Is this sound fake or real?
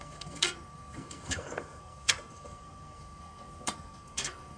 fake